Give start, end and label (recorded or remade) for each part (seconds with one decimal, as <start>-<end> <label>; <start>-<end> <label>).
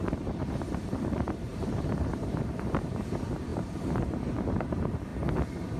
0.0-5.1 remade; 5.1-5.8 recorded